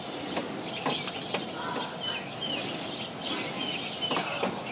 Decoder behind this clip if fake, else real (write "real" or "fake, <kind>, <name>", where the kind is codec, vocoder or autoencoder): real